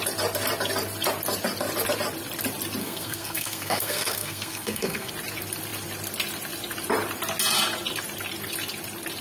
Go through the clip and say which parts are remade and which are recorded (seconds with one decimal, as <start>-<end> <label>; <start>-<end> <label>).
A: 0.0-2.8 recorded; 2.8-5.1 remade; 5.1-9.2 recorded